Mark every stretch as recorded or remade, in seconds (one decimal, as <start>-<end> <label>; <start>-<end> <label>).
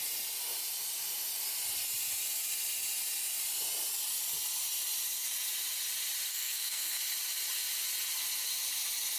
0.0-6.3 recorded; 6.3-7.0 remade; 7.0-9.2 recorded